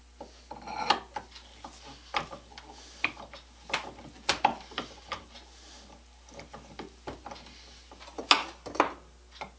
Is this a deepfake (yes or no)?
no